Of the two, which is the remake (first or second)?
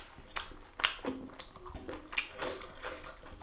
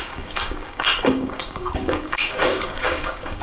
second